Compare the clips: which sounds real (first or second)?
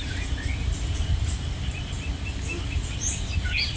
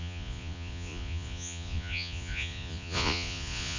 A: first